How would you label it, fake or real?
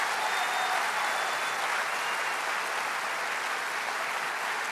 real